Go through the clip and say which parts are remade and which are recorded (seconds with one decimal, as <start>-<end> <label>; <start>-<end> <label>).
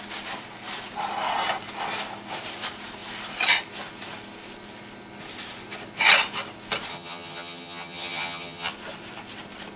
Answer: 0.0-6.9 recorded; 6.9-8.7 remade; 8.7-9.8 recorded